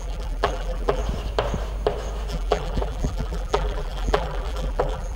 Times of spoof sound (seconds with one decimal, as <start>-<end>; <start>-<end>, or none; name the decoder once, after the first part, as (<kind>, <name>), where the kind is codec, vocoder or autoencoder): 0.0-1.0 (vocoder, BigVGAN v2); 2.3-5.2